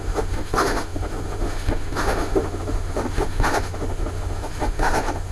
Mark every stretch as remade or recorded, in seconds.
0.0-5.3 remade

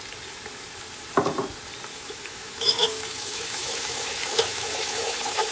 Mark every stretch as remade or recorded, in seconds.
0.0-1.9 recorded; 1.9-5.5 remade

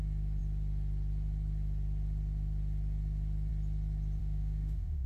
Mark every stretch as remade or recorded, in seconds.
0.0-4.2 recorded; 4.2-5.1 remade